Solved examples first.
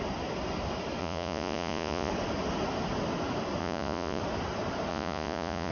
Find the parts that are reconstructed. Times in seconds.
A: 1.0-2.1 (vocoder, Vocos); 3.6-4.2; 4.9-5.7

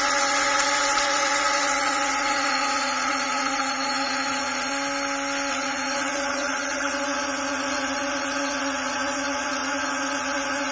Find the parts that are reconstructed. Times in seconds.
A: 0.0-4.7 (vocoder, Vocos); 5.5-10.7

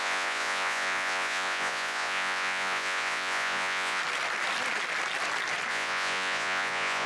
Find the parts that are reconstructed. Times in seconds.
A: 0.0-4.0 (vocoder, Vocos); 5.7-7.1

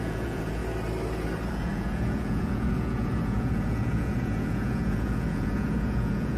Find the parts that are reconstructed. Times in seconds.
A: 0.0-0.6 (vocoder, Vocos); 1.5-6.4

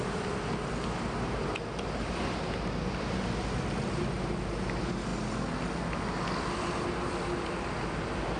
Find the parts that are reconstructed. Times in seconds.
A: none

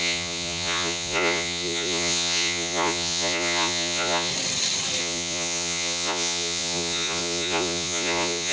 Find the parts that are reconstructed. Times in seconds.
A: 0.0-4.3 (vocoder, Vocos); 5.0-8.5